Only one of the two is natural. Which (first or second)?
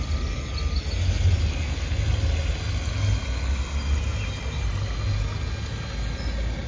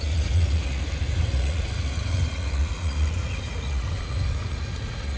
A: first